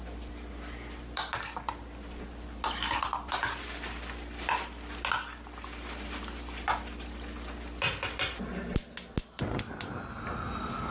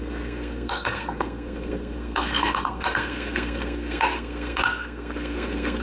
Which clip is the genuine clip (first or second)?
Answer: first